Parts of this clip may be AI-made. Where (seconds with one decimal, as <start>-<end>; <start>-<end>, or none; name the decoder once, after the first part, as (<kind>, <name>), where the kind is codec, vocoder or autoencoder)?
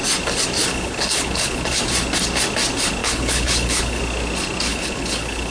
0.6-1.8 (codec, HILCodec); 3.0-4.0; 4.7-5.5